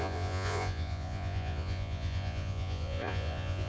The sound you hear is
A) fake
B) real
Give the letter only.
A